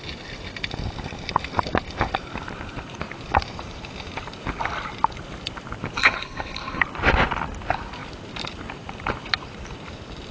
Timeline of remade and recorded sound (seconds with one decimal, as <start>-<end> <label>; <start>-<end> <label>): 0.0-6.0 recorded; 6.0-6.8 remade; 6.8-10.3 recorded